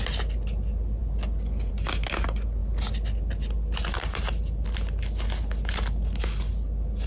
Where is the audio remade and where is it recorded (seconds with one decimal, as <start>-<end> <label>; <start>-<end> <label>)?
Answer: 0.0-7.1 recorded

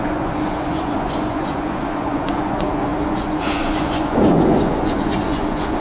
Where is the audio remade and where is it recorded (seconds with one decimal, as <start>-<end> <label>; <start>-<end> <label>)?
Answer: 0.0-5.8 remade

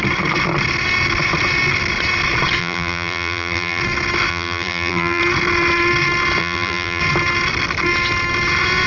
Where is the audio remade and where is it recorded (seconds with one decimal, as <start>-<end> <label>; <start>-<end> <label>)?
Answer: 0.0-2.6 recorded; 2.6-3.8 remade; 3.8-4.3 recorded; 4.3-5.2 remade; 5.2-6.4 recorded; 6.4-7.0 remade; 7.0-8.9 recorded

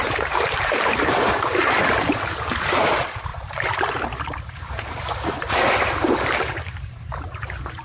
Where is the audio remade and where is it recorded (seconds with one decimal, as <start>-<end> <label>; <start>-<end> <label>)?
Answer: 0.0-7.8 remade

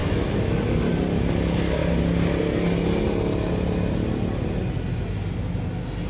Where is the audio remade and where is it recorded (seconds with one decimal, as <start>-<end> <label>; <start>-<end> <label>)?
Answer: 0.0-0.9 remade; 0.9-6.1 recorded

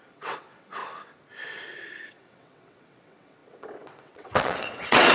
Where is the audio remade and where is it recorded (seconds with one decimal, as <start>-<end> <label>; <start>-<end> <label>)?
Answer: 0.0-0.8 remade; 0.8-2.1 recorded; 2.1-5.1 remade

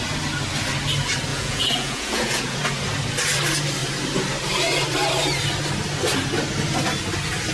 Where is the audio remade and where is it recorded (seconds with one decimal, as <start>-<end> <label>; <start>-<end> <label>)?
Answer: 0.0-1.3 recorded; 1.3-2.6 remade; 2.6-7.5 recorded

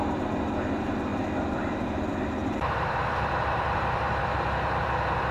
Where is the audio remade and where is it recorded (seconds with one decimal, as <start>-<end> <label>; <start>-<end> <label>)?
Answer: 0.0-1.1 recorded; 1.1-1.7 remade; 1.7-2.4 recorded; 2.4-4.2 remade; 4.2-5.3 recorded